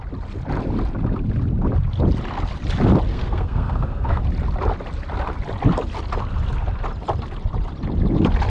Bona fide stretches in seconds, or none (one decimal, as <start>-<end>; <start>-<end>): 0.0-3.1; 4.2-8.5